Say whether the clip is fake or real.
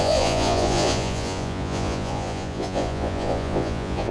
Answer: fake